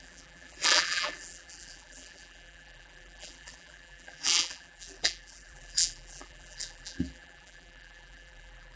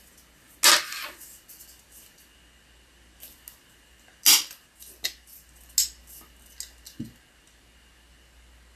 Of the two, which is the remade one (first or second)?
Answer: first